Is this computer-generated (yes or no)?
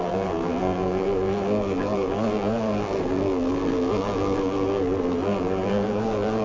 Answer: yes